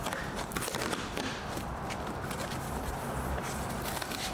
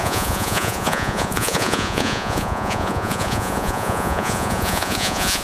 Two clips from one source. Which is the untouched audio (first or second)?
first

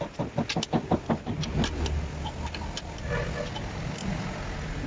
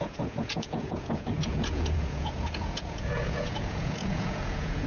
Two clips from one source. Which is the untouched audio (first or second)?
first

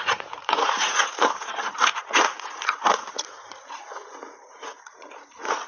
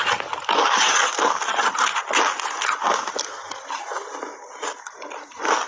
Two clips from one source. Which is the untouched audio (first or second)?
second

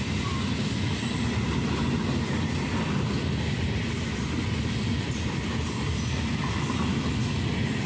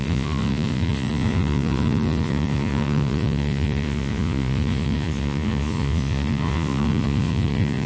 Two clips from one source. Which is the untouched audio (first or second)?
first